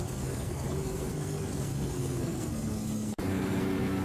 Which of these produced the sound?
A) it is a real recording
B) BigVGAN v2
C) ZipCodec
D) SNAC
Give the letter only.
D